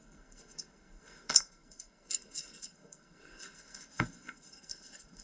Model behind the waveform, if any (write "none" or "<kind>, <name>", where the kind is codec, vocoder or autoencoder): codec, SNAC